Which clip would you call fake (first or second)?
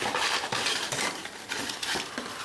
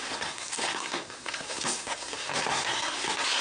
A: second